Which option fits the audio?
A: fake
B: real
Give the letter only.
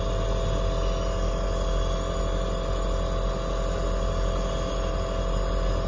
B